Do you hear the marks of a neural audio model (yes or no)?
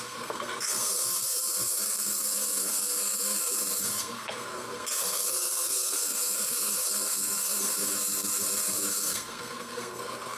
yes